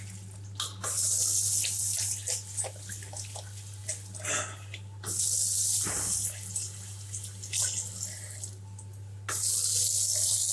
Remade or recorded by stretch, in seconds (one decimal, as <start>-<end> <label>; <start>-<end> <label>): 0.0-10.5 recorded